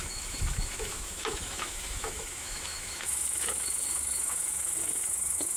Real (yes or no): no